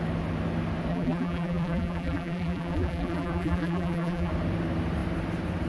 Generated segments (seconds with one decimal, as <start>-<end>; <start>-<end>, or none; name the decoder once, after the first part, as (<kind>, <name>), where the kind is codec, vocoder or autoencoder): 0.9-4.3 (vocoder, BigVGAN v2)